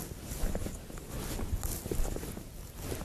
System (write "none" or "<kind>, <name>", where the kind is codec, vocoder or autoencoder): none